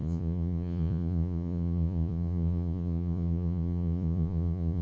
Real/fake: fake